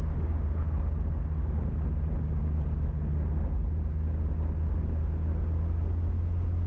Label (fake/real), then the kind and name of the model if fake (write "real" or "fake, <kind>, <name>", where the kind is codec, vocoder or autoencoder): real